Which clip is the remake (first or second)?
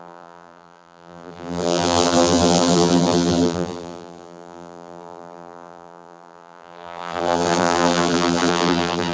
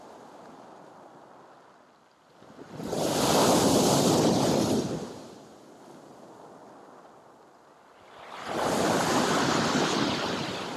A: first